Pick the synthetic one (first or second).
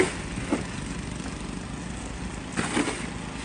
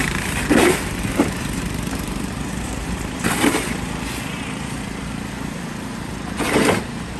second